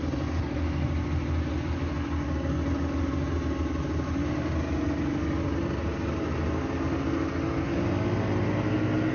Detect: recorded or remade recorded